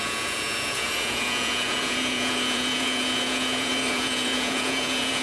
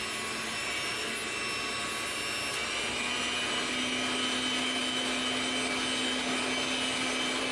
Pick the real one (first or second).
second